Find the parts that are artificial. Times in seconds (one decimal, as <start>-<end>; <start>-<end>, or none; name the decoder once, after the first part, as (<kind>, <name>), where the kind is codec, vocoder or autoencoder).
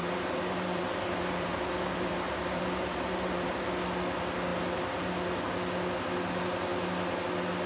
0.0-3.7 (vocoder, BigVGAN v2); 4.5-5.1